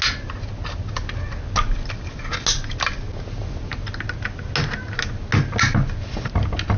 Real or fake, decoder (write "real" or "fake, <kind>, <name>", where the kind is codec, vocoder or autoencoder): real